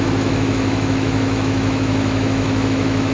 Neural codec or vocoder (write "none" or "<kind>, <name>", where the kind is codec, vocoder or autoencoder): autoencoder, DAC-VAE